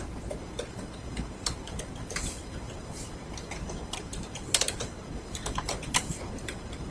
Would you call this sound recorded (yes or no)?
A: no